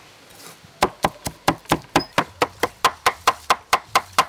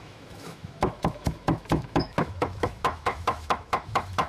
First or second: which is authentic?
first